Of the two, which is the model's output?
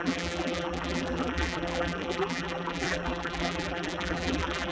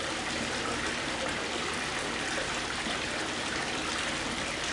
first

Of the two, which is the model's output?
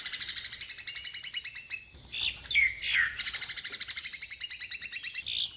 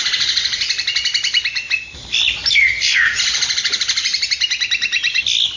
second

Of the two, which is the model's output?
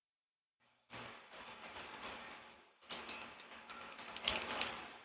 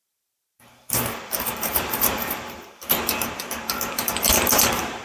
second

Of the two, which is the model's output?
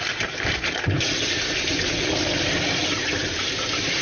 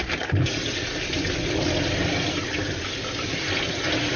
first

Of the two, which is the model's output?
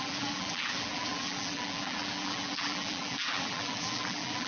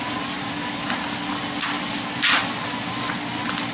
first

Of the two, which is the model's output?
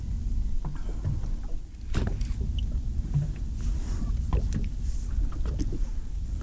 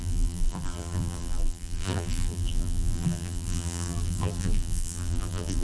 second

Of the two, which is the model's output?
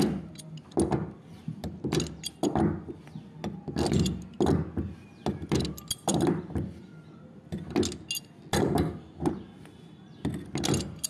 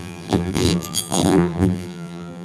second